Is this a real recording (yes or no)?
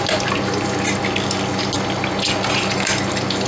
yes